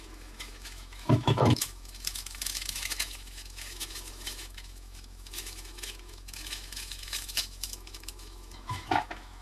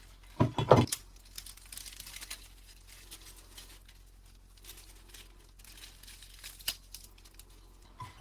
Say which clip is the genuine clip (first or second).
second